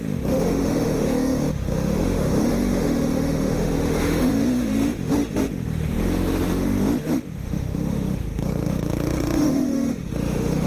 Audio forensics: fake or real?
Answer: fake